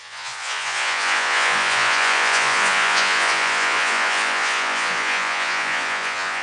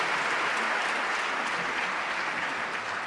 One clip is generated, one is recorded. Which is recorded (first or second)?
second